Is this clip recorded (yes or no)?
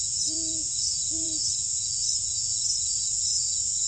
no